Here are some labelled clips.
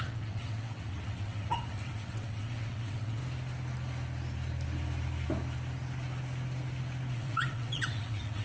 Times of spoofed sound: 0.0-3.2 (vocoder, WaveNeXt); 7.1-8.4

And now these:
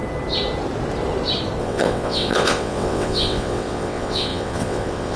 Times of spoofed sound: 1.6-5.2 (vocoder, WaveNeXt)

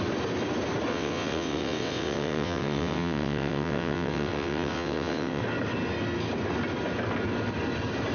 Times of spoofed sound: 0.9-5.4 (vocoder, WaveNeXt)

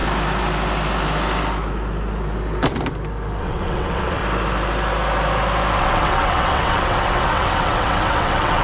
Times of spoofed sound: 3.4-4.2 (vocoder, WaveNeXt); 5.8-8.6

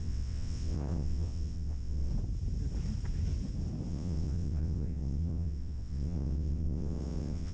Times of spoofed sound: 0.0-2.1 (vocoder, WaveNeXt); 3.9-7.5